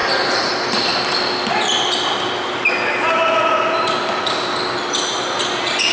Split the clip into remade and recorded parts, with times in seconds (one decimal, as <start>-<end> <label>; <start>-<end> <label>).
0.0-5.9 recorded